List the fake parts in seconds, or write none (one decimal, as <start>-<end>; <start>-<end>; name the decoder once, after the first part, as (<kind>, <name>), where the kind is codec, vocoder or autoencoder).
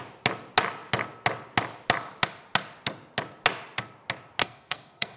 4.4-5.2 (codec, SNAC)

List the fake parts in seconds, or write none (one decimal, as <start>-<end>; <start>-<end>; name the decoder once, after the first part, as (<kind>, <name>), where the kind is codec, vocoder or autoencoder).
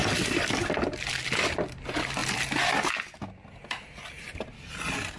0.0-1.0 (vocoder, BigVGAN v2)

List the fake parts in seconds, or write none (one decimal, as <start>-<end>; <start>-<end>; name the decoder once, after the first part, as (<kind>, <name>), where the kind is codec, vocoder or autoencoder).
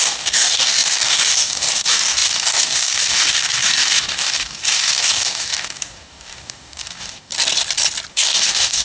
0.0-7.3 (codec, DAC); 8.1-8.8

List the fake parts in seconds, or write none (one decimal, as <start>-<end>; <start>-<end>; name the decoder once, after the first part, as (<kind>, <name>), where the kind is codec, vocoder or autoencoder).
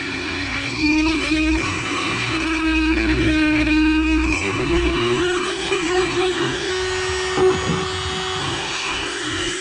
0.0-6.7 (codec, SNAC); 8.4-9.6